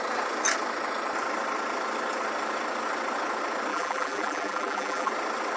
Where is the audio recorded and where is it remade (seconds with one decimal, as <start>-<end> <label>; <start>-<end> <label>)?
0.0-3.7 recorded; 3.7-5.1 remade; 5.1-5.6 recorded